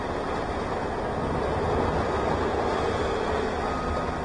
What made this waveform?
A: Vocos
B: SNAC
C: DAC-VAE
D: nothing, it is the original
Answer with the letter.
D